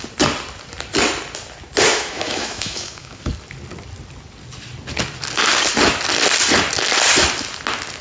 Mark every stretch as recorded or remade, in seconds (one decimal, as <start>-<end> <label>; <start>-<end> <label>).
0.0-1.9 recorded; 1.9-3.2 remade; 3.2-8.0 recorded